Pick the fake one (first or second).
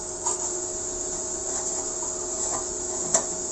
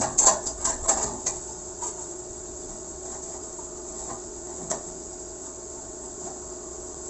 second